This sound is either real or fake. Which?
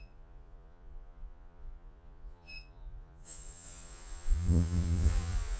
fake